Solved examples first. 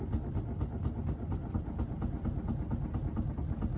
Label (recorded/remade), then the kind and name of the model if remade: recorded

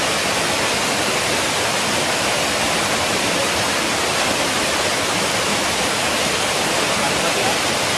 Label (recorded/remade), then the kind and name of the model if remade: recorded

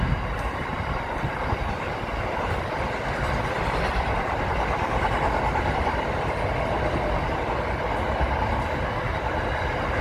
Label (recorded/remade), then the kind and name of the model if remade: recorded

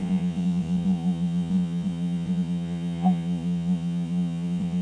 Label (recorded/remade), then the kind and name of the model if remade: remade, vocoder, Vocos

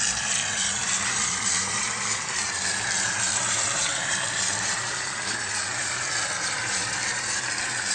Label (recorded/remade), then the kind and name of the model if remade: remade, vocoder, BigVGAN v2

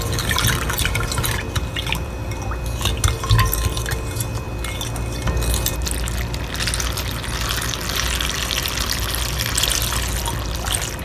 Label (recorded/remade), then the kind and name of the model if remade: recorded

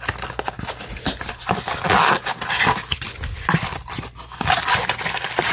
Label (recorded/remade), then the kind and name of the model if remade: recorded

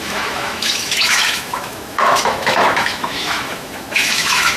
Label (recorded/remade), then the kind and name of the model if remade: remade, autoencoder, DAC-VAE